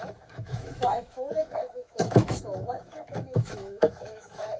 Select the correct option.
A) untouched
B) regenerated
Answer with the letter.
B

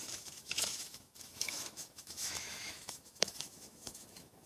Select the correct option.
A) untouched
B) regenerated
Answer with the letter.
B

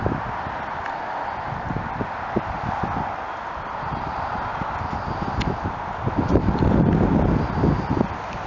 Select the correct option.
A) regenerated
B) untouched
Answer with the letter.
B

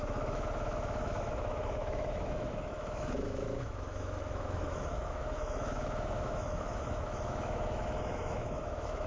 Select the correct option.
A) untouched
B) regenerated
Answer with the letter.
B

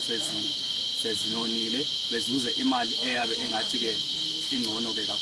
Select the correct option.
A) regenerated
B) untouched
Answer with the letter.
A